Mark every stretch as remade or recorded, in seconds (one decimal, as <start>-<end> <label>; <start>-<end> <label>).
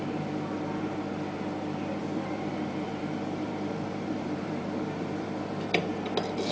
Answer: 0.0-2.0 recorded; 2.0-5.9 remade; 5.9-6.5 recorded